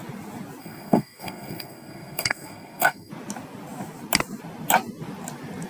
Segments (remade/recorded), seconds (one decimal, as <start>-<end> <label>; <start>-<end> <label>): 0.0-0.6 recorded; 0.6-3.1 remade; 3.1-5.7 recorded